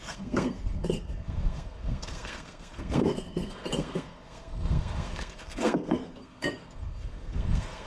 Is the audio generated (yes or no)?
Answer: yes